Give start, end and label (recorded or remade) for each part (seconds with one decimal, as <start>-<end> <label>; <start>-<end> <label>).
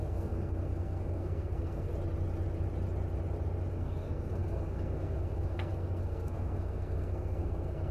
0.0-1.9 remade; 1.9-3.7 recorded; 3.7-7.9 remade